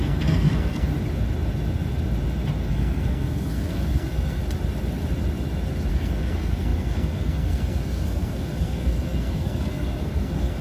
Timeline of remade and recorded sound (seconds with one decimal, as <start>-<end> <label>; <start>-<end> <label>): 0.0-0.9 remade; 0.9-2.7 recorded; 2.7-4.4 remade; 4.4-5.9 recorded; 5.9-10.6 remade